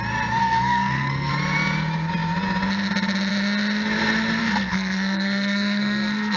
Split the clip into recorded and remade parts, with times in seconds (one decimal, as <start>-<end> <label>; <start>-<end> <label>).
0.0-0.4 recorded; 0.4-1.3 remade; 1.3-4.4 recorded; 4.4-6.4 remade